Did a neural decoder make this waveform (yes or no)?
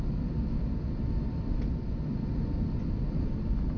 no